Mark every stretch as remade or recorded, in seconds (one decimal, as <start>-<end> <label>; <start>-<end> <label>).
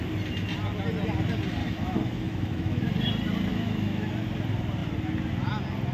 0.0-1.6 recorded; 1.6-3.1 remade; 3.1-3.5 recorded; 3.5-4.1 remade; 4.1-5.9 recorded